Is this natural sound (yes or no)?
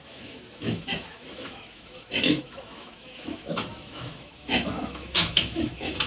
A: no